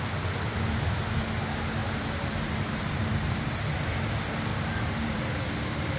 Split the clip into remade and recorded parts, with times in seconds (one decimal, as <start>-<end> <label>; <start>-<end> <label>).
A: 0.0-1.8 recorded; 1.8-3.4 remade; 3.4-4.5 recorded; 4.5-5.5 remade; 5.5-6.0 recorded